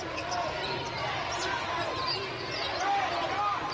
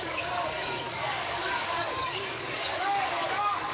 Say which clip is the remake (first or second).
second